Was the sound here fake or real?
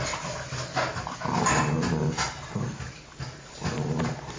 real